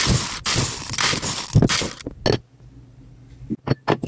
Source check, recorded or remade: recorded